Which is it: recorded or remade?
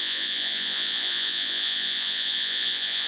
remade